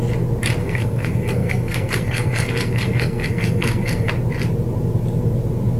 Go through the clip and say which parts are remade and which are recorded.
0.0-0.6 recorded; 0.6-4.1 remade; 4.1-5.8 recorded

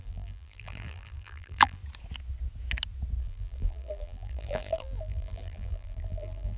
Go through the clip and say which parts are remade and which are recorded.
0.0-1.8 remade; 1.8-3.2 recorded; 3.2-6.6 remade

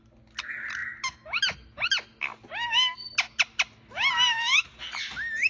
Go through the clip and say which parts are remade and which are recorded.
0.0-5.5 recorded

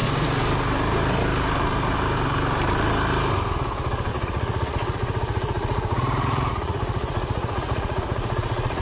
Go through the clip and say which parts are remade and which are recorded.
0.0-4.1 recorded; 4.1-8.8 remade

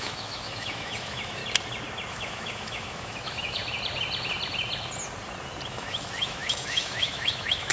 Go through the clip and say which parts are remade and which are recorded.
0.0-1.4 remade; 1.4-2.1 recorded; 2.1-3.6 remade; 3.6-5.7 recorded; 5.7-7.7 remade

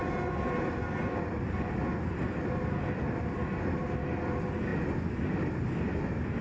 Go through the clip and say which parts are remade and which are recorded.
0.0-6.4 recorded